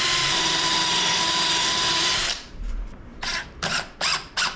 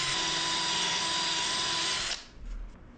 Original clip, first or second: second